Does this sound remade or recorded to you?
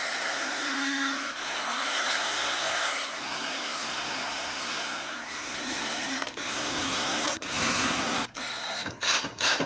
remade